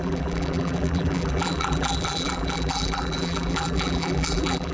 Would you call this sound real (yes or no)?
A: no